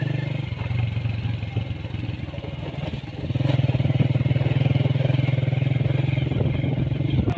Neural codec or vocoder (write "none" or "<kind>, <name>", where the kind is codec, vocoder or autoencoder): none